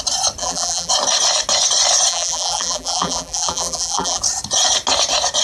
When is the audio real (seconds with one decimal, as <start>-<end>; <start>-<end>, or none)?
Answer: 0.0-0.4; 0.9-2.1; 4.2-5.4